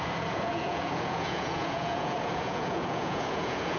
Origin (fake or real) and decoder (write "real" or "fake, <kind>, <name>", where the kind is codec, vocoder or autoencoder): fake, vocoder, Vocos